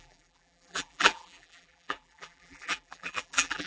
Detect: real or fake fake